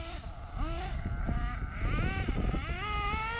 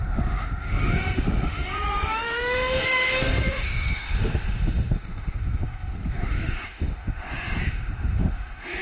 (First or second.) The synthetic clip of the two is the second